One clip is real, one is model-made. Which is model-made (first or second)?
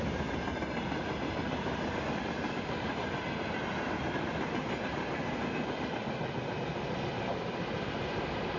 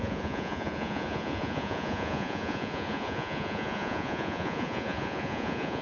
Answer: second